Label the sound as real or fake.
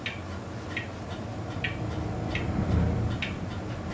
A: real